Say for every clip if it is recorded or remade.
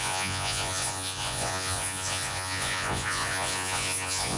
remade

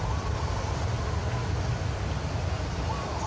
recorded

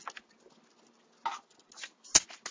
recorded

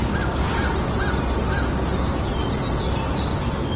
recorded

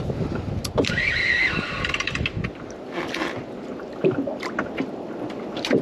recorded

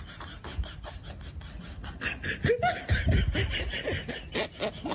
recorded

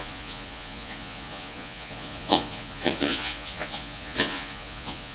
remade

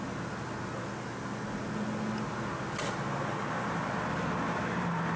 recorded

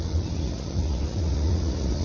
remade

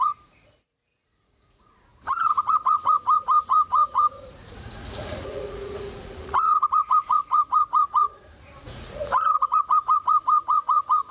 remade